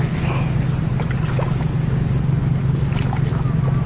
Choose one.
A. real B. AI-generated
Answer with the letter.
A